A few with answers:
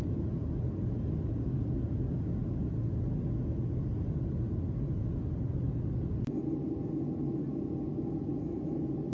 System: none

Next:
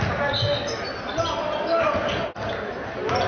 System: none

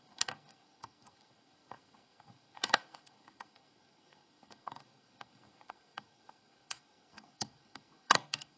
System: codec, SNAC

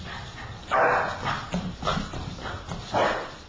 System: none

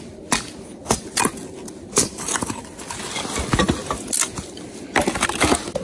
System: none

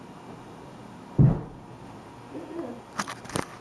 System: none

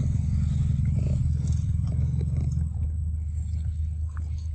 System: none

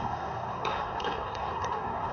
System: codec, SNAC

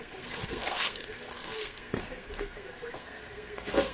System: codec, SNAC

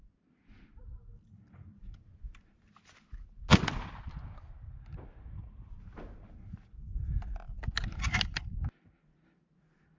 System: none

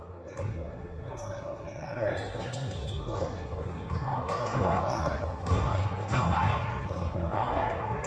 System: codec, SNAC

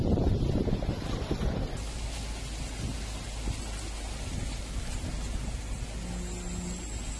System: none